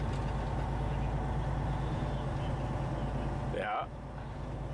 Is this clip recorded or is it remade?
recorded